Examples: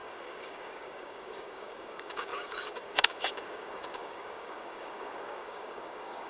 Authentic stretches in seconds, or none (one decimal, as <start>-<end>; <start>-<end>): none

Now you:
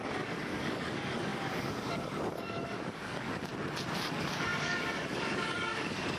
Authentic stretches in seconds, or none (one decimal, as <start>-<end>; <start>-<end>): 3.5-4.0

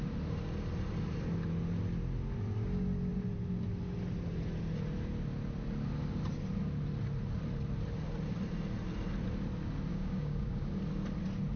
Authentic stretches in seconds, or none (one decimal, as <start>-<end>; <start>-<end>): 0.0-9.9; 10.7-11.6